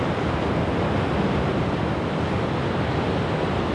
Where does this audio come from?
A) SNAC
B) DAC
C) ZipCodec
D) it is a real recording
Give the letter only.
D